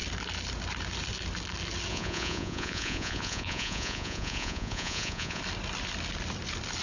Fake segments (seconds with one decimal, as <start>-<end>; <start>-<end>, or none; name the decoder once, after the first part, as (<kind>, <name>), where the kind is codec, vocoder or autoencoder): 1.9-5.4 (vocoder, Vocos)